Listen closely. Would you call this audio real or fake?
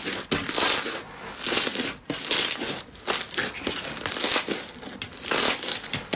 real